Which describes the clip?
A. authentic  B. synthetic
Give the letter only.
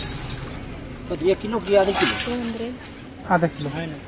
A